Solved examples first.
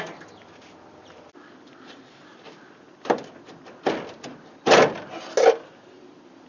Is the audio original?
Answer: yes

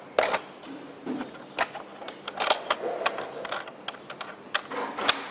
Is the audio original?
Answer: yes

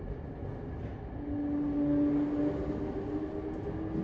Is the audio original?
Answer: yes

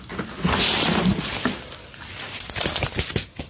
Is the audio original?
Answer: yes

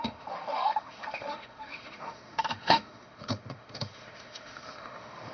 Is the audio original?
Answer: no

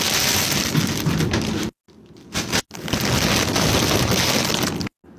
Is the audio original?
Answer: yes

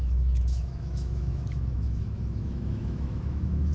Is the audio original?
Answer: no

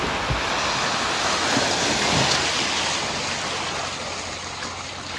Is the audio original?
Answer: yes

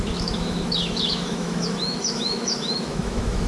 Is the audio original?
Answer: no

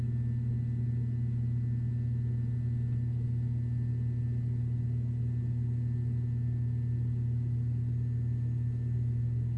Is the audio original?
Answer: yes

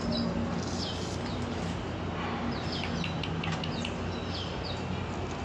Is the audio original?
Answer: yes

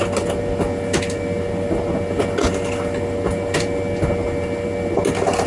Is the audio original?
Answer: yes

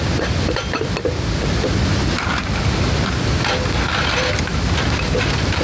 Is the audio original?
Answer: yes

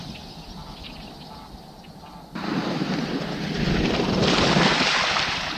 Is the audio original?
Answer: yes